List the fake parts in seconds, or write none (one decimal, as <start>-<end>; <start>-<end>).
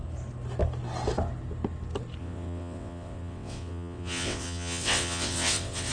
2.2-5.9